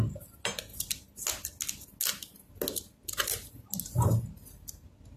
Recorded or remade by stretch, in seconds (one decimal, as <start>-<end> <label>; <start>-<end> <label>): 0.0-5.2 recorded